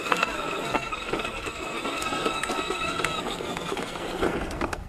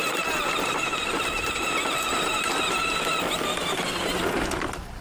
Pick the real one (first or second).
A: second